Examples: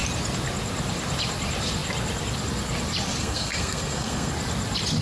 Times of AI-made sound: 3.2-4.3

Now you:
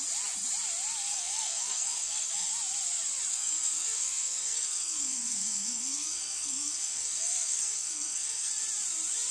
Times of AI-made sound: 1.1-2.5; 3.3-8.5

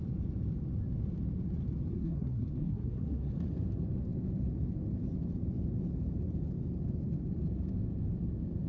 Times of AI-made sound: 1.9-3.3

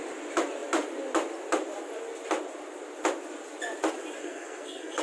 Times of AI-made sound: 4.2-5.0

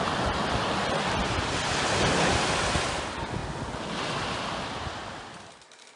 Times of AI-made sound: none

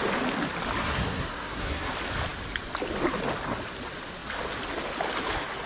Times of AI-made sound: 0.8-1.9

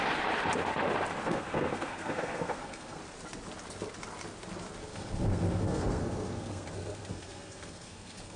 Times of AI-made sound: 1.2-3.0; 4.8-8.4